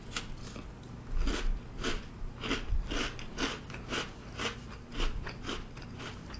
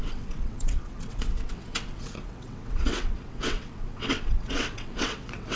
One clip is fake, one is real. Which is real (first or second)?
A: first